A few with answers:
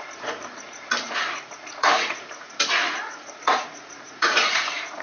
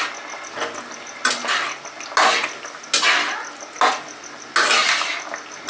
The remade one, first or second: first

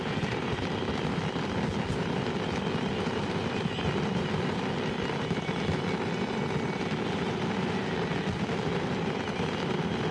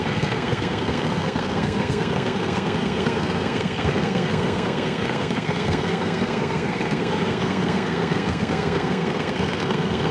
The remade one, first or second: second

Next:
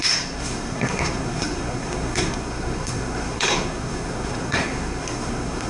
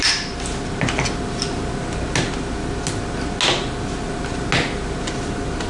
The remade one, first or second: first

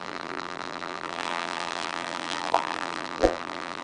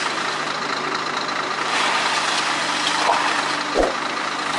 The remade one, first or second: first